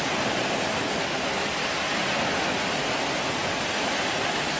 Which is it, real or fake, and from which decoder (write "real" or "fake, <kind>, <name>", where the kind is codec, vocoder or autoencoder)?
real